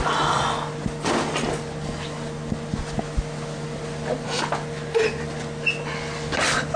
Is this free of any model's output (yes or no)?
yes